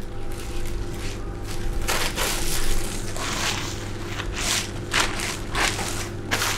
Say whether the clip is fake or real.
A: real